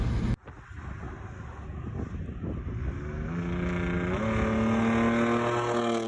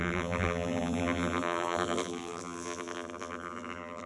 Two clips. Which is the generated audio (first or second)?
second